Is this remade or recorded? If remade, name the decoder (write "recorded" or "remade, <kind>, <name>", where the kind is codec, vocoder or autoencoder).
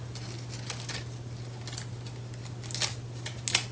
recorded